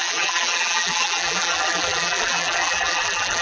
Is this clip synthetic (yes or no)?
yes